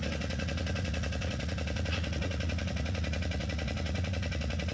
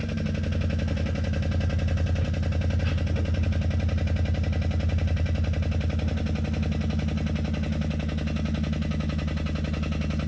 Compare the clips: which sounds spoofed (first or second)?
first